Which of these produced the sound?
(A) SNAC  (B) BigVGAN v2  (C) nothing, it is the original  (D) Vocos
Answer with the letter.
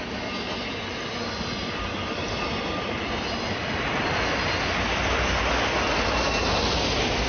C